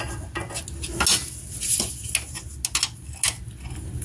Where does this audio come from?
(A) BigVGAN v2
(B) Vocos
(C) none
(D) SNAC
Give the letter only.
C